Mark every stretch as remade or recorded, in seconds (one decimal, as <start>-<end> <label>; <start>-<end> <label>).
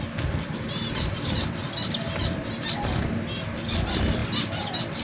0.0-5.0 recorded